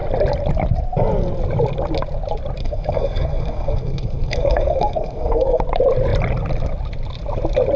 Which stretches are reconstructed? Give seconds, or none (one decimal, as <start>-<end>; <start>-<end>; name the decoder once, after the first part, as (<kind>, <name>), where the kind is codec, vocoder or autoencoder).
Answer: 2.6-5.6 (codec, SNAC)